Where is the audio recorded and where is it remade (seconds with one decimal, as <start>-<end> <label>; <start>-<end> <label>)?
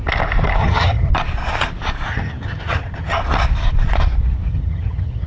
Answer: 0.0-0.6 recorded; 0.6-1.1 remade; 1.1-2.1 recorded; 2.1-3.2 remade; 3.2-4.5 recorded; 4.5-5.3 remade